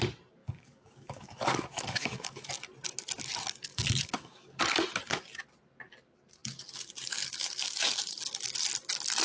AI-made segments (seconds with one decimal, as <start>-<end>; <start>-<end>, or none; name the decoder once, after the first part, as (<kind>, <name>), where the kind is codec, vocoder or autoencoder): 0.4-2.5 (codec, DAC); 3.7-4.6